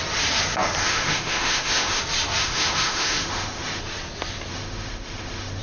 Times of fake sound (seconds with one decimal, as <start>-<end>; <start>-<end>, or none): 0.8-2.0; 2.4-3.8; 4.5-5.6